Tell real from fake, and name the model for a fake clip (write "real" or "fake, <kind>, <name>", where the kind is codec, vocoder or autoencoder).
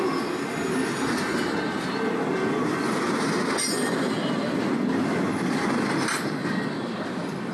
real